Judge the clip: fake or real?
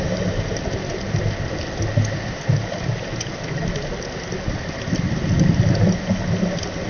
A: real